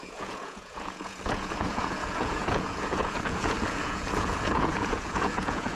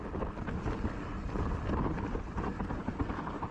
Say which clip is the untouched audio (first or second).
second